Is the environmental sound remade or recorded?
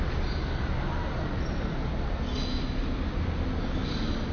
recorded